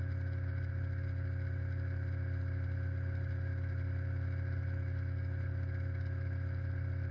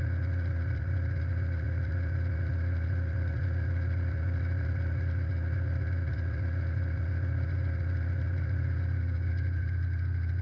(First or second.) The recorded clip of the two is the first